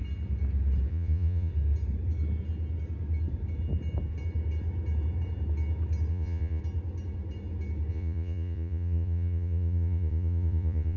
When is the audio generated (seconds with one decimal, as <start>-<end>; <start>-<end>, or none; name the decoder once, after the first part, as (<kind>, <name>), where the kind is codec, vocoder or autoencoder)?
0.9-1.5 (vocoder, Vocos); 6.1-6.6; 7.9-11.0